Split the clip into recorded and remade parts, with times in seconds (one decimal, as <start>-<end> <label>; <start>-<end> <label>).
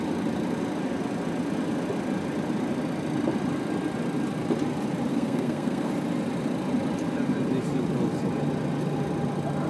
0.0-5.1 recorded; 5.1-5.9 remade; 5.9-9.7 recorded